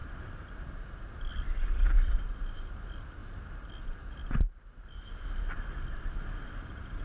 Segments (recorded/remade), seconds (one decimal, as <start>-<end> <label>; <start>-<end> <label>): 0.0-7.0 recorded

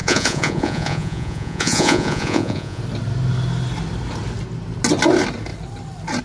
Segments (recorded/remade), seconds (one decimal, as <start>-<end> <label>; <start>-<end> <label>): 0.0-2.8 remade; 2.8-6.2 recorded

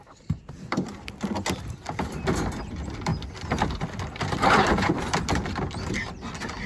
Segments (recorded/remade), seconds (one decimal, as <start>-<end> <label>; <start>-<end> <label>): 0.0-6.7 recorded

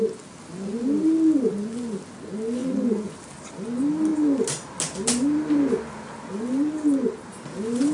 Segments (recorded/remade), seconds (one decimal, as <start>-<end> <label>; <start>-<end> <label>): 0.0-2.6 recorded; 2.6-3.2 remade; 3.2-7.9 recorded

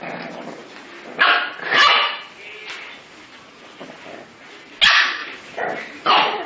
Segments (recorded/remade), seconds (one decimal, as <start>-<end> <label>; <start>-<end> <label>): 0.0-6.5 recorded